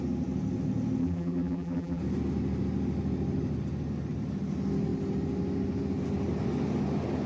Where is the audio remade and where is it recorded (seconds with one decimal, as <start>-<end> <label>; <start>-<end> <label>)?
0.0-1.0 recorded; 1.0-2.0 remade; 2.0-7.3 recorded